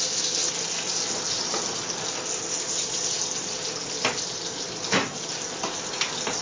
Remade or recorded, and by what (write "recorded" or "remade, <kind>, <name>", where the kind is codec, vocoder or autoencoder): recorded